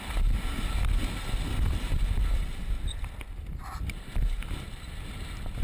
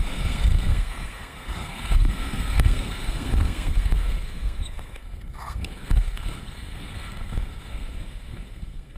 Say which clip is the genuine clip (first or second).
first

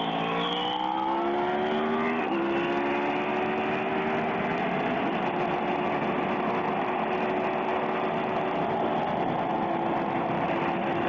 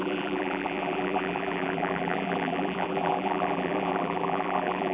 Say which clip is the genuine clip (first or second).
first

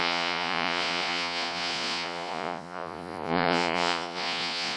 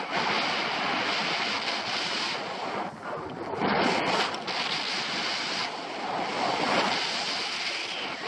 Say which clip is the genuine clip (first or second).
second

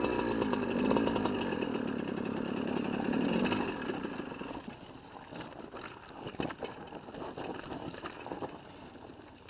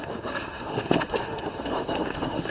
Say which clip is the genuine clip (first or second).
first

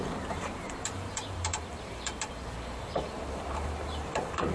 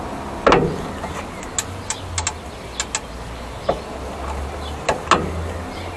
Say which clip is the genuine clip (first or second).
second